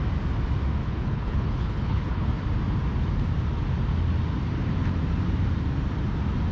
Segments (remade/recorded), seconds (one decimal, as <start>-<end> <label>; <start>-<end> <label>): 0.0-0.8 recorded; 0.8-2.3 remade; 2.3-6.5 recorded